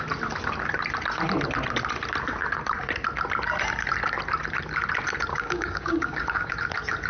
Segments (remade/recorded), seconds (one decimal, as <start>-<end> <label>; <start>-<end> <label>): 0.0-5.3 recorded; 5.3-6.5 remade; 6.5-7.1 recorded